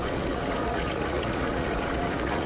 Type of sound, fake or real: fake